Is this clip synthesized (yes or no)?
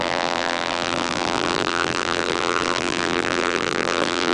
yes